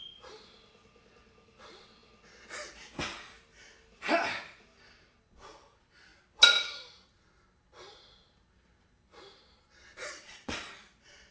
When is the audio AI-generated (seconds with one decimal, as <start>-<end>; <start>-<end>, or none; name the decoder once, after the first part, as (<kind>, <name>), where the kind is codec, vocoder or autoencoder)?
10.0-10.7 (vocoder, Vocos)